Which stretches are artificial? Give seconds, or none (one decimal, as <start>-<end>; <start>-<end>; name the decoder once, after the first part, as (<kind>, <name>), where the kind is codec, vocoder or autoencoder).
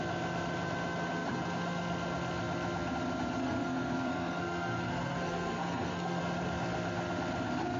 3.4-6.2 (codec, SNAC)